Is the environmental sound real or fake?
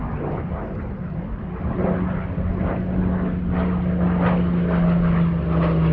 real